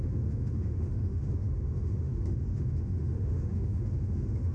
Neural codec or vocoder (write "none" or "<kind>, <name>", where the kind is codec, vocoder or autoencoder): autoencoder, DAC-VAE